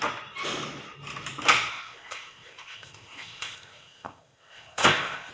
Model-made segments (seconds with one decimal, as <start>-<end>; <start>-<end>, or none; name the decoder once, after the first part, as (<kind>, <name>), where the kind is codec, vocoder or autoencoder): 1.7-5.3 (codec, ZipCodec)